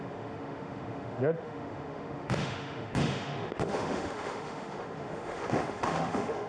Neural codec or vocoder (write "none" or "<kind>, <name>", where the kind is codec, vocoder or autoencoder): autoencoder, DAC-VAE